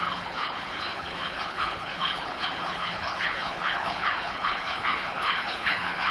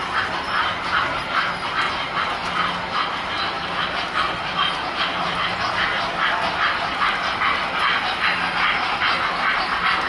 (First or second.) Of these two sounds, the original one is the second